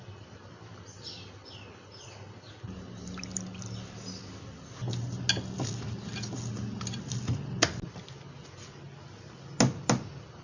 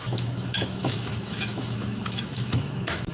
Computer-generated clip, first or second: second